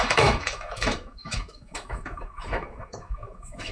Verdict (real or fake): fake